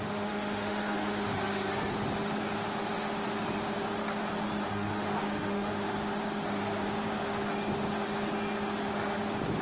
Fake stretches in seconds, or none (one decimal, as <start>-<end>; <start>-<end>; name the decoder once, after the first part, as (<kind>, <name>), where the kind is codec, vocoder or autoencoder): 0.0-1.3 (autoencoder, DAC-VAE); 4.7-5.7